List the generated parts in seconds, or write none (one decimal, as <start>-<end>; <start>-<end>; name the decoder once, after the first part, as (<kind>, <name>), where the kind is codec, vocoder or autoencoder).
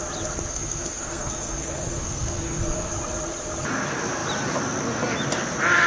0.5-2.9 (codec, SNAC)